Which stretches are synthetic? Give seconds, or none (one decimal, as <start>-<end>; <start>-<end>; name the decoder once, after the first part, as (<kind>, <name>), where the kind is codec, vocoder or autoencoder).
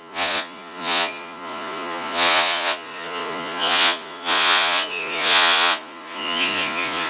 0.0-7.1 (vocoder, Vocos)